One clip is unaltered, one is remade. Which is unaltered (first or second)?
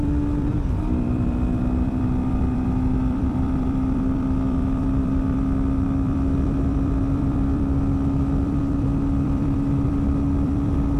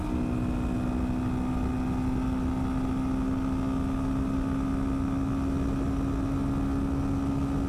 second